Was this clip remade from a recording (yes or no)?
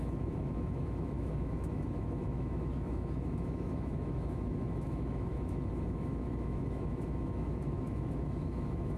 yes